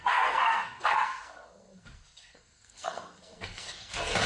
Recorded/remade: remade